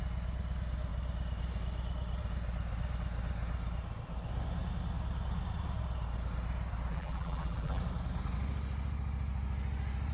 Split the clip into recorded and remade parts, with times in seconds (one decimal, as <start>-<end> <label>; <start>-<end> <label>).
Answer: 0.0-6.9 recorded; 6.9-7.8 remade; 7.8-10.1 recorded